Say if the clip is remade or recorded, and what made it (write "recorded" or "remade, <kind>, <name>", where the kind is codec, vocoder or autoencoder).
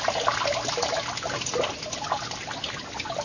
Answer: recorded